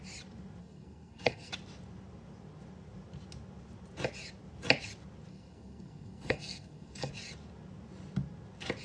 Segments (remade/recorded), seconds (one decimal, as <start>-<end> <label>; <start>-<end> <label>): 0.0-0.6 recorded; 0.6-1.5 remade; 1.5-5.3 recorded; 5.3-7.1 remade; 7.1-8.8 recorded